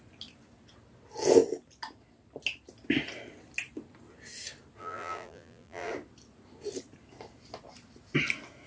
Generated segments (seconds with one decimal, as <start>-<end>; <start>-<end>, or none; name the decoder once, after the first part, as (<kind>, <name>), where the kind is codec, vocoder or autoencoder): 4.8-5.9 (vocoder, BigVGAN v2)